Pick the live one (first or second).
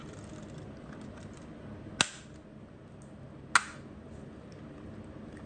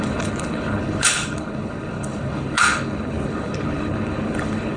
first